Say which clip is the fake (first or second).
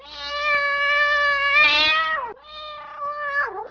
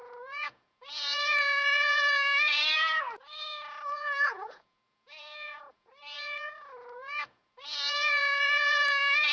second